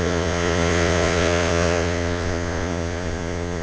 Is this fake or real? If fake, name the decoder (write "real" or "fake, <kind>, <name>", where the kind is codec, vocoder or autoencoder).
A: fake, vocoder, Vocos